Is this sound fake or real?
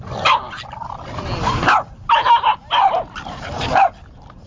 real